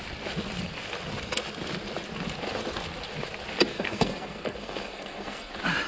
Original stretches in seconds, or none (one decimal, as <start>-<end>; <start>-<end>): 0.0-3.7; 5.5-5.9